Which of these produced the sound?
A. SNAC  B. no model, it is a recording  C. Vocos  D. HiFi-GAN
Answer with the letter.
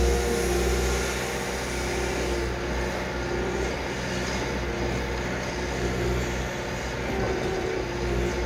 B